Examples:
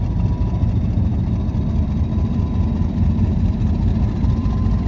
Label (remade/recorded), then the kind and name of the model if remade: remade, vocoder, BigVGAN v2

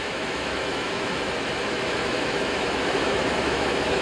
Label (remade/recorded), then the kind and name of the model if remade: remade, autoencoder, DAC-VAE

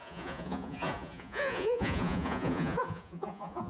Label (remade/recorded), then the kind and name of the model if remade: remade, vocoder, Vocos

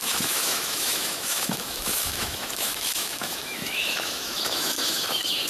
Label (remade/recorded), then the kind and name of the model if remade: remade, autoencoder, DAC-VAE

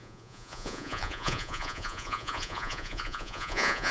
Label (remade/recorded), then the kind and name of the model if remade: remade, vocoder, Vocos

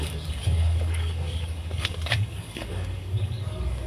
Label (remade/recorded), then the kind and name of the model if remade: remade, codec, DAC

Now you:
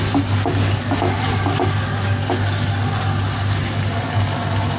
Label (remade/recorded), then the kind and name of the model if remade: recorded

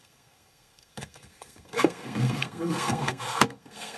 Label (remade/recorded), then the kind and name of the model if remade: remade, codec, SNAC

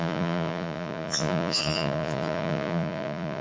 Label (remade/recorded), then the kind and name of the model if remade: remade, vocoder, Vocos